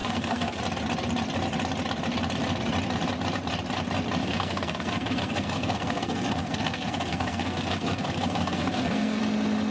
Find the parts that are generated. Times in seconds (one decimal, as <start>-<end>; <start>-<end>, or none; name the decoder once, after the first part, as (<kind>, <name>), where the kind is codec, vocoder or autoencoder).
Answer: 0.0-0.6 (codec, SNAC); 4.2-9.2